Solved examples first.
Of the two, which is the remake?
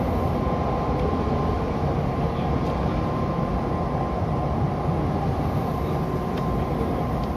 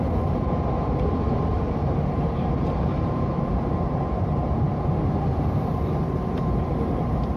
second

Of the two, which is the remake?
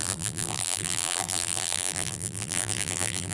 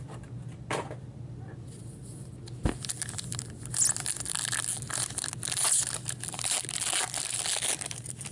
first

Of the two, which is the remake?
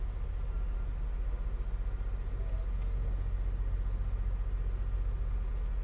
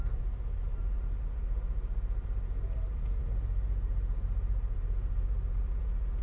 second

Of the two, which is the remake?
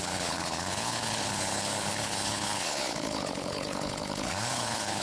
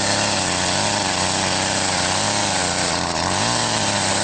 first